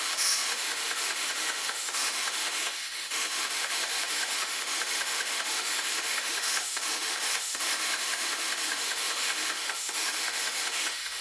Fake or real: fake